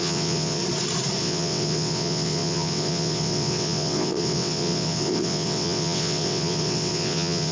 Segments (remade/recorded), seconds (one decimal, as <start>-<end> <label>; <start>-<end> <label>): 0.0-0.6 remade; 0.6-1.2 recorded; 1.2-7.5 remade